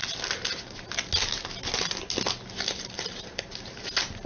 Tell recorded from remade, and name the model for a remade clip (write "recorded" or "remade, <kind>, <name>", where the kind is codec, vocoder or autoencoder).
recorded